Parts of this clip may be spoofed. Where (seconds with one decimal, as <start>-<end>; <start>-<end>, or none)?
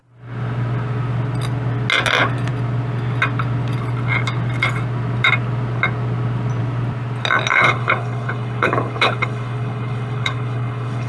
7.5-11.1